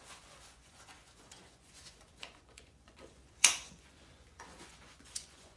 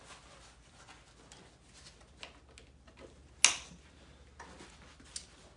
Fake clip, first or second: first